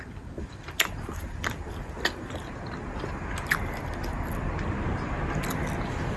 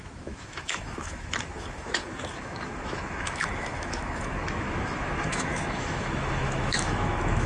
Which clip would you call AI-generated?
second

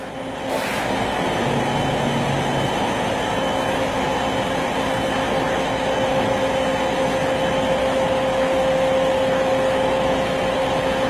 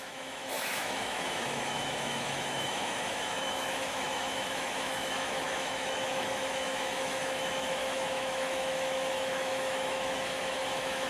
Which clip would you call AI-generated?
second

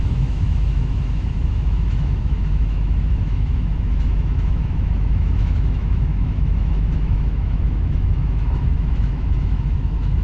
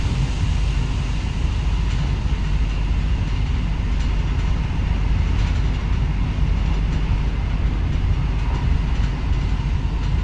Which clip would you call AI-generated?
first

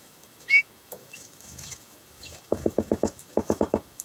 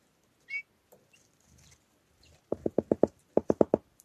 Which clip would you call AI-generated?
first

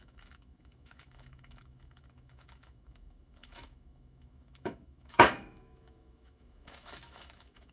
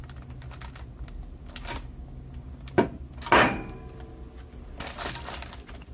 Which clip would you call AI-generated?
first